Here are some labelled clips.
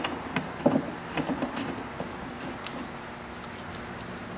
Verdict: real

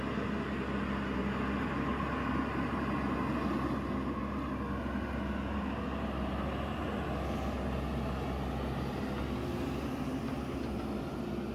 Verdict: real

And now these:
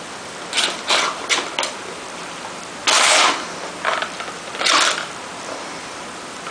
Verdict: real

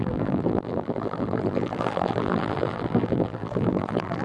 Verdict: fake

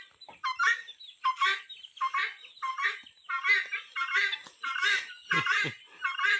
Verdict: real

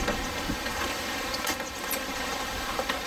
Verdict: fake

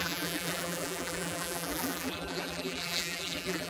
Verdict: fake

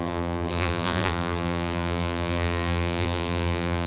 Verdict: fake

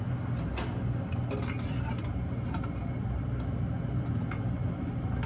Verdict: real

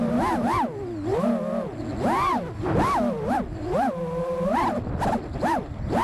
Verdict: real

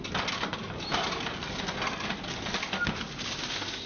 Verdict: real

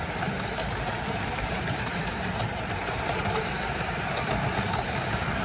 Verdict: fake